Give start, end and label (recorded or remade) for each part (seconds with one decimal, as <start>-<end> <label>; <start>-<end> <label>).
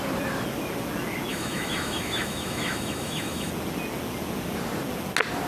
0.0-1.3 recorded; 1.3-3.5 remade; 3.5-5.5 recorded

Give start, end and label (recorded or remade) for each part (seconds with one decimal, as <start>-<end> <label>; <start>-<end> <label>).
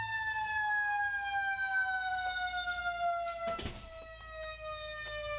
0.0-5.4 recorded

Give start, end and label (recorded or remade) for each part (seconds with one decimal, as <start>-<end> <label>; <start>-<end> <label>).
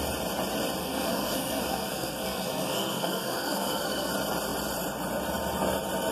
0.0-0.8 recorded; 0.8-4.1 remade; 4.1-6.1 recorded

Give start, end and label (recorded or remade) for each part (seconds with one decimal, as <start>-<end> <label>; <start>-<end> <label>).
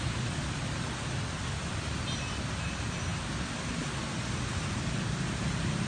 0.0-5.9 recorded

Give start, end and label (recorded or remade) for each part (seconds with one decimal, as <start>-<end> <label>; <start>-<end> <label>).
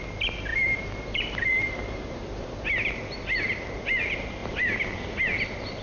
0.0-0.5 recorded; 0.5-2.6 remade; 2.6-4.4 recorded; 4.4-5.2 remade; 5.2-5.8 recorded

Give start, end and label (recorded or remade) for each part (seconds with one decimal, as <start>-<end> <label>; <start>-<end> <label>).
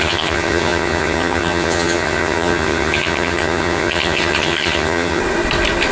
0.0-5.2 remade; 5.2-5.9 recorded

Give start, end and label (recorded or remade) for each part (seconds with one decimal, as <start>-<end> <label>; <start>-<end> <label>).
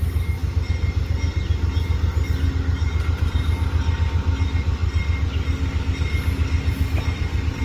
0.0-7.6 recorded